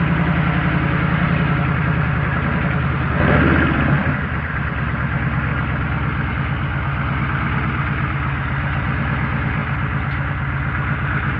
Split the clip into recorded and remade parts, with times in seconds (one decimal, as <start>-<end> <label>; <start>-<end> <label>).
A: 0.0-11.4 recorded